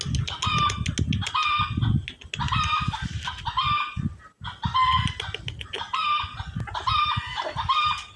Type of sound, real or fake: real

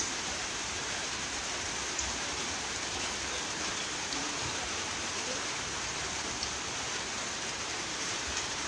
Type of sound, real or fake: fake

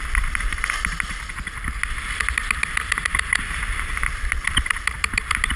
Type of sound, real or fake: fake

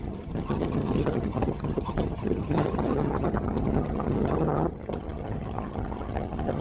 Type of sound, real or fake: fake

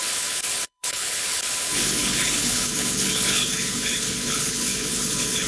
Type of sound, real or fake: fake